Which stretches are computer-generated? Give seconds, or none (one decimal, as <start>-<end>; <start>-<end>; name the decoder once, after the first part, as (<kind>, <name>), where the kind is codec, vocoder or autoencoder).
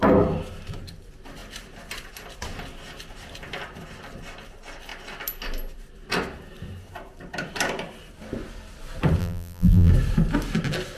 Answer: 9.2-9.9 (vocoder, BigVGAN v2)